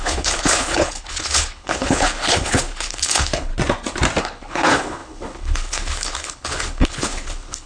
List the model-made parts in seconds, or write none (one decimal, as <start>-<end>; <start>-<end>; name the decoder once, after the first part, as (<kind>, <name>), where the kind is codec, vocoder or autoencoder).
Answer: 0.0-3.5 (codec, HILCodec); 4.2-7.7